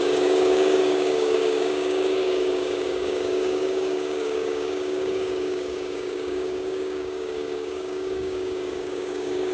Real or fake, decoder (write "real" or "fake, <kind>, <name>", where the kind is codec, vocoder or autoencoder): fake, codec, DAC